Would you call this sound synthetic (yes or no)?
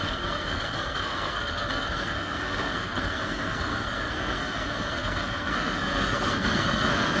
yes